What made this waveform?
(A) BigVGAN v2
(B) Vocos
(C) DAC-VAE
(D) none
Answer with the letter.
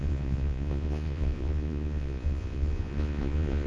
B